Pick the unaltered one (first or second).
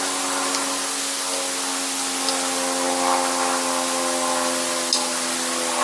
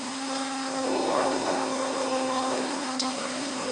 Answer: first